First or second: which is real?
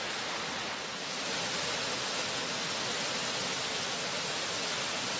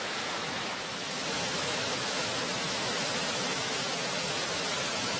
first